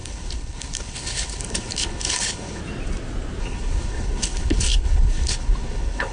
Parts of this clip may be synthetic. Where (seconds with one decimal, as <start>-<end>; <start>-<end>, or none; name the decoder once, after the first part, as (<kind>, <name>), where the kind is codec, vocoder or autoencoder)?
0.0-2.6 (codec, HILCodec); 3.4-6.1

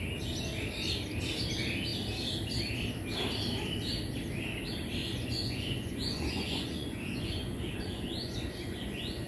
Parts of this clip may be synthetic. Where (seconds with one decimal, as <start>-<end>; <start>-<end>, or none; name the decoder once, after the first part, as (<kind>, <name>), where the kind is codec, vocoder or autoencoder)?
5.0-9.3 (vocoder, Vocos)

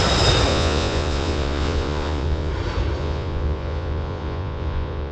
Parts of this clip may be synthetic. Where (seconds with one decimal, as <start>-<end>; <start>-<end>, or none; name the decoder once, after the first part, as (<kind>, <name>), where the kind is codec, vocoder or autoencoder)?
0.5-2.5 (vocoder, Vocos); 3.0-5.1

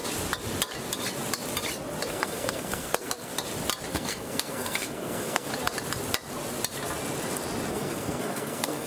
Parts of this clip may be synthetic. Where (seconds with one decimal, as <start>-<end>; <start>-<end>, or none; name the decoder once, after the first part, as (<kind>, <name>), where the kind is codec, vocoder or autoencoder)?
2.1-3.3 (codec, SNAC); 3.9-5.5; 7.7-8.9

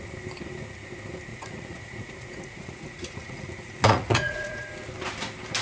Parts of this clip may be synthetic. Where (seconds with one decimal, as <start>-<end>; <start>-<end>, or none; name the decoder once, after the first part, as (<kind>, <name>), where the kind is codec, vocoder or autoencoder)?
1.3-4.7 (vocoder, Vocos)